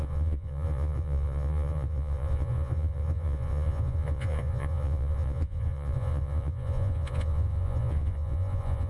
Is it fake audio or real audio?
fake